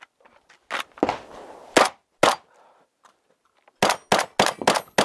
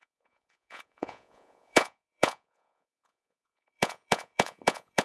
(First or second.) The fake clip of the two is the second